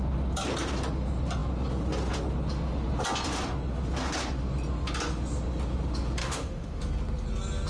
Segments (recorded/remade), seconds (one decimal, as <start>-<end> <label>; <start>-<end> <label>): 0.0-6.2 recorded; 6.2-6.8 remade; 6.8-7.7 recorded